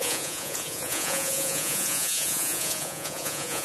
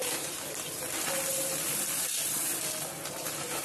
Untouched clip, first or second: second